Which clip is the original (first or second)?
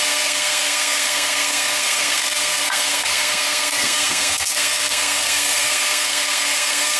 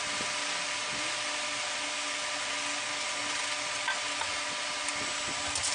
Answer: second